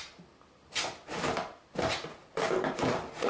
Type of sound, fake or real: real